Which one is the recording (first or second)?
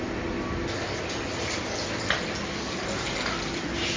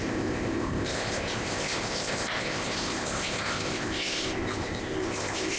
first